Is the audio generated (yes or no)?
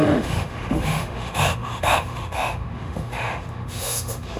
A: yes